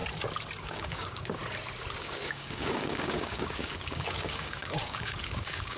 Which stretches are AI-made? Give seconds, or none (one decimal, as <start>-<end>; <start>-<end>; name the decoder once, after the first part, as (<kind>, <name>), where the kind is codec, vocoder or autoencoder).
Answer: 0.6-1.4 (codec, DAC); 2.0-5.8